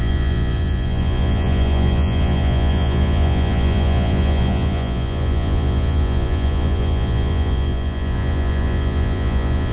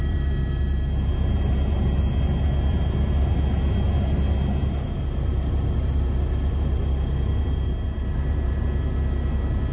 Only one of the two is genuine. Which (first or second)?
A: second